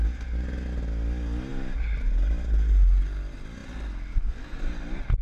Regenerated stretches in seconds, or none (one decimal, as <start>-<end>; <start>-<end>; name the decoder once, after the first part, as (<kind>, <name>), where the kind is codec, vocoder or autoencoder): none